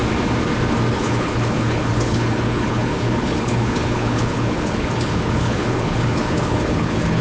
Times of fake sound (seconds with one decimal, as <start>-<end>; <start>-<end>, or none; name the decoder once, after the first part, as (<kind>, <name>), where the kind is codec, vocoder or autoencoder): 0.9-7.2 (codec, HILCodec)